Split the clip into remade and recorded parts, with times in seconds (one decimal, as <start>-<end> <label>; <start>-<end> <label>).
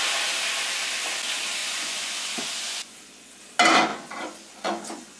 0.0-1.6 recorded; 1.6-3.0 remade; 3.0-3.9 recorded; 3.9-5.2 remade